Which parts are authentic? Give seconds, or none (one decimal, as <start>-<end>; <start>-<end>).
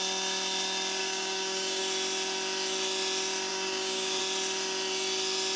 0.0-1.0; 1.8-3.5; 4.2-5.6